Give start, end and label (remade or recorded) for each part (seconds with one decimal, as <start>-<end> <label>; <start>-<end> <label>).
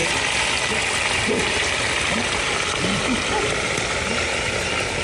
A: 0.0-3.0 remade; 3.0-5.0 recorded